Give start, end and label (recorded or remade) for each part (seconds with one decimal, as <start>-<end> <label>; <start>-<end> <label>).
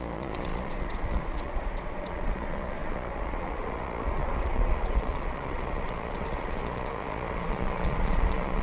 0.0-8.6 remade